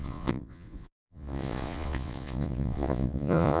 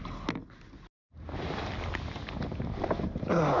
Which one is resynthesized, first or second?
first